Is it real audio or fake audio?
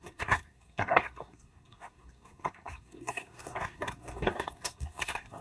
fake